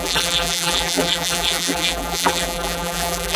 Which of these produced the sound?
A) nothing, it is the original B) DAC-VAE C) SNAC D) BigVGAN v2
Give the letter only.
D